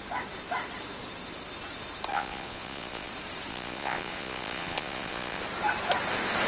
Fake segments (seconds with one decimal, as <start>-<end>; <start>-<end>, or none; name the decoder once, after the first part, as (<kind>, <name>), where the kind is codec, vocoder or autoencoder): 2.1-3.1 (vocoder, Vocos); 3.5-5.4